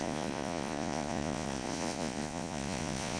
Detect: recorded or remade remade